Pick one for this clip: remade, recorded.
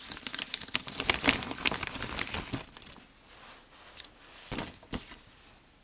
recorded